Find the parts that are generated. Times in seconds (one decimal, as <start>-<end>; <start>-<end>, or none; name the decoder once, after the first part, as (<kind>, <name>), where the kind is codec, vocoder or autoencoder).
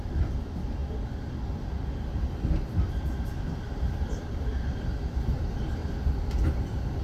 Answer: 5.8-7.0 (vocoder, BigVGAN v2)